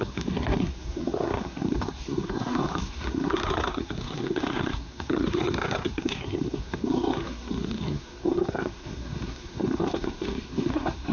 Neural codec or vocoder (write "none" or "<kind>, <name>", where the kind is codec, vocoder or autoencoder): codec, SNAC